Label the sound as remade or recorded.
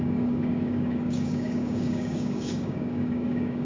remade